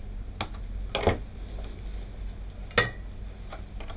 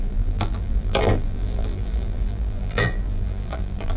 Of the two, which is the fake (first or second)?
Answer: second